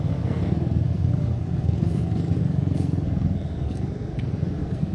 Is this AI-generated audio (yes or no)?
yes